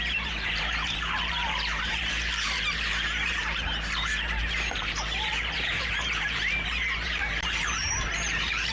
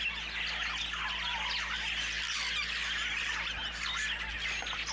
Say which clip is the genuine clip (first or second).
second